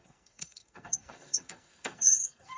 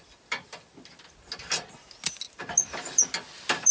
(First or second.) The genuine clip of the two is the second